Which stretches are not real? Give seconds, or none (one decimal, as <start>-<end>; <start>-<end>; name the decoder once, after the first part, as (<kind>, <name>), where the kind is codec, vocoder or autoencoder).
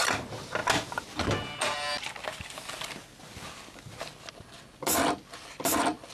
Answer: none